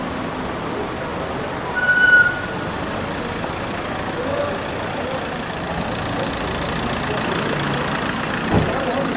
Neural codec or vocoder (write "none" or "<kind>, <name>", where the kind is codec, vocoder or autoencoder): none